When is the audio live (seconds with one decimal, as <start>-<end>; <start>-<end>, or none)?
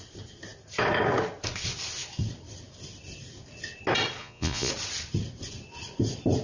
0.0-4.2; 4.7-6.4